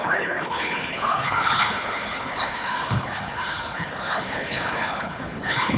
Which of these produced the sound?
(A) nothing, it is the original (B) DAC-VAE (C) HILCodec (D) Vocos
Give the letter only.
C